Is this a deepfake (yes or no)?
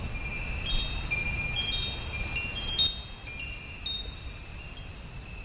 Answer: no